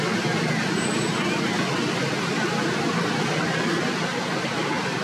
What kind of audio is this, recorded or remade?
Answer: recorded